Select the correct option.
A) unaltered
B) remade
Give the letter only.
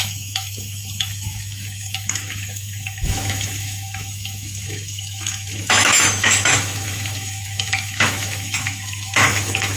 B